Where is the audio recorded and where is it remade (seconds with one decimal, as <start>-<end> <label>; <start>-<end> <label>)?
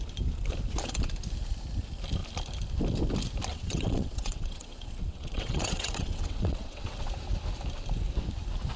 0.0-3.5 recorded; 3.5-7.0 remade; 7.0-8.8 recorded